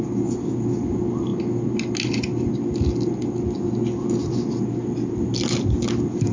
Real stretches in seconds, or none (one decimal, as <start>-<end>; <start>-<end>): 0.0-6.3